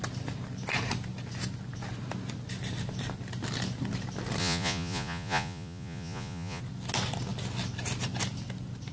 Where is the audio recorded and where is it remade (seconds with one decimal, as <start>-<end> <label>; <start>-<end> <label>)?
0.0-4.4 recorded; 4.4-6.6 remade; 6.6-8.9 recorded